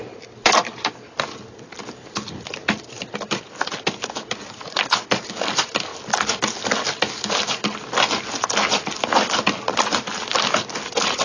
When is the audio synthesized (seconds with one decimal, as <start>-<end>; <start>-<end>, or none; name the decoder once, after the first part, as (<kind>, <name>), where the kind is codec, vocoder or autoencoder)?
none